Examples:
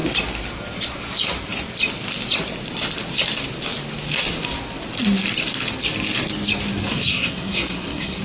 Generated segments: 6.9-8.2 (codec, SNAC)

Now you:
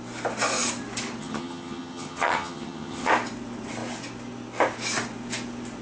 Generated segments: 1.2-3.1 (vocoder, HiFi-GAN)

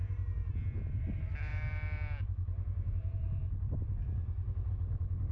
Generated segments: none

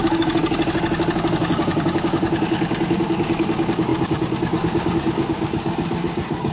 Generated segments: 0.0-0.4 (codec, DAC); 1.1-6.5